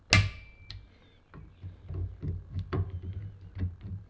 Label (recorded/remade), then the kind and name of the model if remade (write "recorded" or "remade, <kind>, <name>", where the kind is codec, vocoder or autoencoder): recorded